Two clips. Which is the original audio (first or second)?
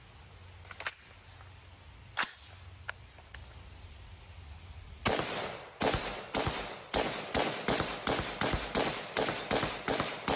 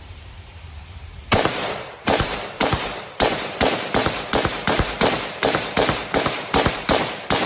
first